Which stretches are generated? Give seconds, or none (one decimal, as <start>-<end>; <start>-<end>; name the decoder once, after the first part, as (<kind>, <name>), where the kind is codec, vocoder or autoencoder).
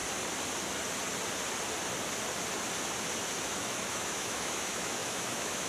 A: 3.4-5.7 (autoencoder, DAC-VAE)